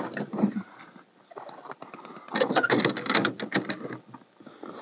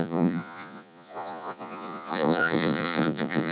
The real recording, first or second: first